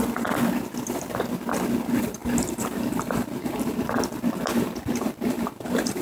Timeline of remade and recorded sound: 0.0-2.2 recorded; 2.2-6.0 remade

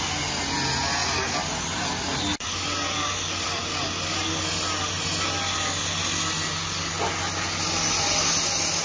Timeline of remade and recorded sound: 0.0-8.8 recorded